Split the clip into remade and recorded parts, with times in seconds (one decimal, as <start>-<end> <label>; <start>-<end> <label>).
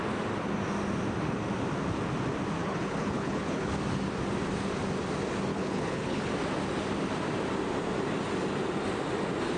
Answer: 0.0-2.6 recorded; 2.6-3.7 remade; 3.7-5.5 recorded; 5.5-6.3 remade; 6.3-9.6 recorded